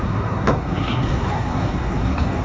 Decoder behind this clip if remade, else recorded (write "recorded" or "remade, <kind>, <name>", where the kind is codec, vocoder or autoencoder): remade, codec, SNAC